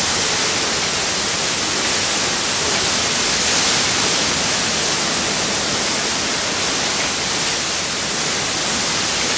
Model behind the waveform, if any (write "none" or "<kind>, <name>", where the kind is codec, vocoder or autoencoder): none